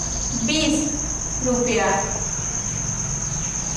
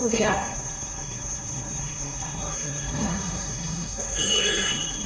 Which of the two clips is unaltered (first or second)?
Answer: first